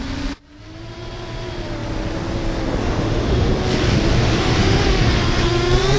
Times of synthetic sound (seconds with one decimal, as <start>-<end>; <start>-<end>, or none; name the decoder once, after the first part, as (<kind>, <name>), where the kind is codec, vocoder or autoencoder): 2.8-3.5 (autoencoder, DAC-VAE); 4.2-4.8